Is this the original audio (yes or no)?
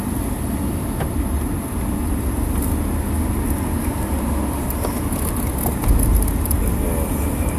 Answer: yes